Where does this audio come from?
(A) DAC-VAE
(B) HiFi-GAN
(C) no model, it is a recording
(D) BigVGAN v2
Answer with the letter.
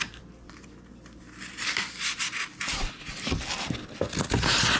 C